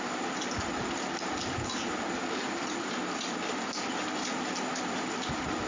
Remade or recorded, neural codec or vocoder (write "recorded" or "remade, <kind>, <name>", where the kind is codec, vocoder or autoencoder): recorded